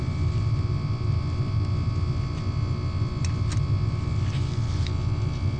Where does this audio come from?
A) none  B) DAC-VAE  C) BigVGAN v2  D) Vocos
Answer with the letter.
A